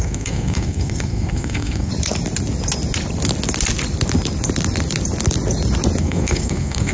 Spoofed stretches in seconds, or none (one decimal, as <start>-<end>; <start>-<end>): 0.0-1.9; 6.0-6.9